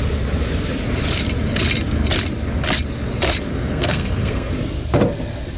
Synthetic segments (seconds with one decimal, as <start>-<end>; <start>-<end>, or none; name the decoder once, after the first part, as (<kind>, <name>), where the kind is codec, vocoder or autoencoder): 3.5-4.5 (codec, SNAC)

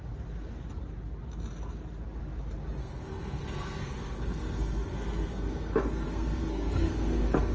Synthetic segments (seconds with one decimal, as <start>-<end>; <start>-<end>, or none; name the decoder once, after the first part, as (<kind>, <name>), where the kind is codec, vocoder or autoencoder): 2.8-7.5 (codec, SNAC)

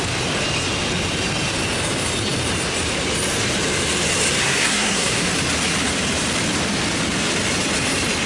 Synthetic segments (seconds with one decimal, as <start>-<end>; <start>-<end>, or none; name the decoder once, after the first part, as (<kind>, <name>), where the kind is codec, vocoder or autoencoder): 4.4-5.3 (codec, SNAC)

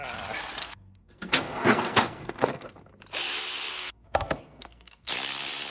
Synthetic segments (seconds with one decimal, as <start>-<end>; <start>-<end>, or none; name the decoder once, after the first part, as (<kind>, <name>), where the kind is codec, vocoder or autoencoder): 0.6-2.9 (codec, SNAC); 3.7-5.1